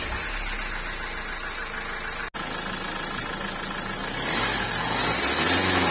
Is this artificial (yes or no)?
no